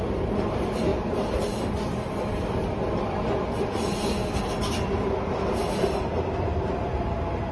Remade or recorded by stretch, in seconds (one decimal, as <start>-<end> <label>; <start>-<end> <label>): 0.0-7.5 recorded